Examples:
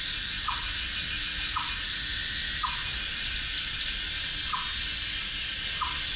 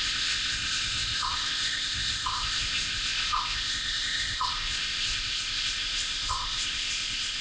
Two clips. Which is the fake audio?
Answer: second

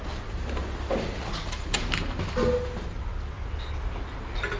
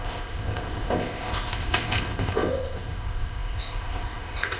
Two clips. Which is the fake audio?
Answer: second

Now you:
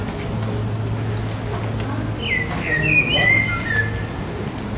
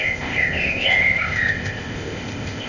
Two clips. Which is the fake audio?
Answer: second